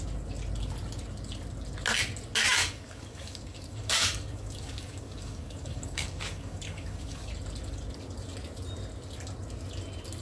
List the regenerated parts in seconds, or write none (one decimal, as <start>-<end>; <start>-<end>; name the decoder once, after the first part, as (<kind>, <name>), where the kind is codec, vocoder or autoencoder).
2.6-7.3 (codec, DAC)